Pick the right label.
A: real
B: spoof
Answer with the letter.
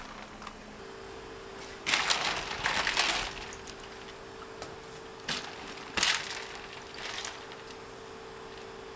A